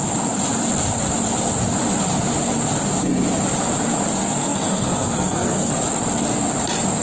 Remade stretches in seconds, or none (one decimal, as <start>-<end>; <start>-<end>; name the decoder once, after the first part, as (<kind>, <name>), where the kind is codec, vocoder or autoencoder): 4.2-5.7 (codec, SNAC)